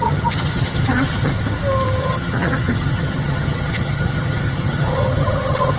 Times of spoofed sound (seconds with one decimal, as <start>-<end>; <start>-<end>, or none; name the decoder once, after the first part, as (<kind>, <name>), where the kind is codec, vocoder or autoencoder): 0.0-1.3 (vocoder, HiFi-GAN); 2.0-5.8